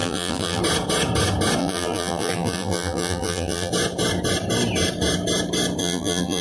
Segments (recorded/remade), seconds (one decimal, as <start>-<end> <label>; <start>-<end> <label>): 0.0-0.6 remade; 0.6-1.6 recorded; 1.6-3.7 remade; 3.7-5.8 recorded; 5.8-6.4 remade